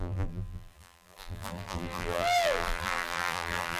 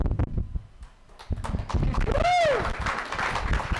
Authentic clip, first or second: second